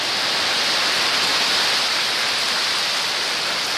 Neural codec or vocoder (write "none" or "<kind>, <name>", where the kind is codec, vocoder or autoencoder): none